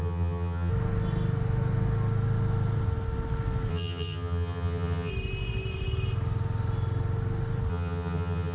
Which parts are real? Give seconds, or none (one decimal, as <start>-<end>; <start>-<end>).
0.7-3.7; 5.1-7.7